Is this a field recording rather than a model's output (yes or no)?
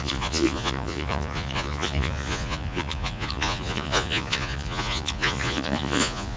no